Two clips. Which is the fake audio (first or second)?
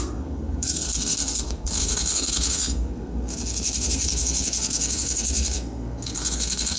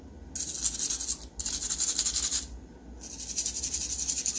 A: first